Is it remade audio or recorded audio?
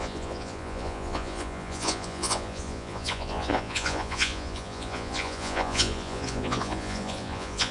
remade